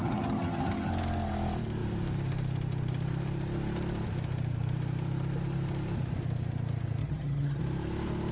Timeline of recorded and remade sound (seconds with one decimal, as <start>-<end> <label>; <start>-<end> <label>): 0.0-0.9 remade; 0.9-7.0 recorded; 7.0-7.6 remade; 7.6-8.3 recorded